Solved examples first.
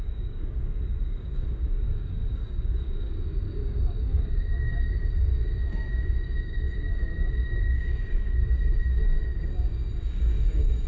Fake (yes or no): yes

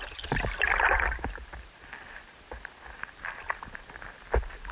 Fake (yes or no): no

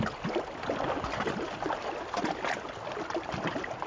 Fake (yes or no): no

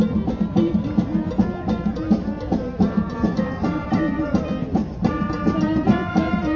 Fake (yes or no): no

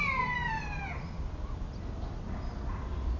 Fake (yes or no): no